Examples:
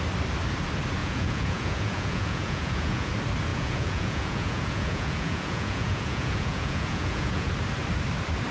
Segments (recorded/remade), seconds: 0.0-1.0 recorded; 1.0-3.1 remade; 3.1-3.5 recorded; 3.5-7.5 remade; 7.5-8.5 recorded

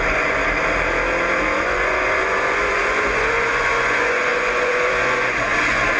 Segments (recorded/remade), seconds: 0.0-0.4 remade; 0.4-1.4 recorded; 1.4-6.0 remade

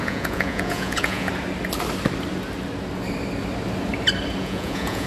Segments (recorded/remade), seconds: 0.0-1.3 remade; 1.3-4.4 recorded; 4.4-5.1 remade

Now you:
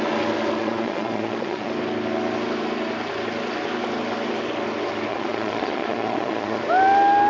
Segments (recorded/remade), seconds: 0.0-0.6 recorded; 0.6-1.7 remade; 1.7-5.1 recorded; 5.1-6.6 remade; 6.6-7.3 recorded